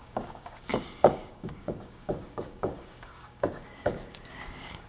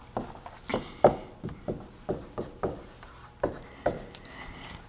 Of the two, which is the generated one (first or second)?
first